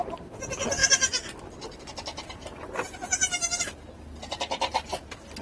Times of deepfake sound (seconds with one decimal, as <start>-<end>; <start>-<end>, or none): none